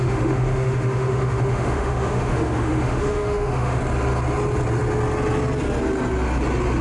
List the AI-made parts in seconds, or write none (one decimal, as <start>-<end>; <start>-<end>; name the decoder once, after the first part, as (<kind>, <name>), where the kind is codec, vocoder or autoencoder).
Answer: 0.0-3.8 (autoencoder, DAC-VAE)